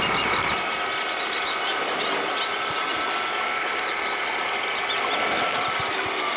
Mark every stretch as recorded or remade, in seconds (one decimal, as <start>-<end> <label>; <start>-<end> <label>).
0.0-6.4 recorded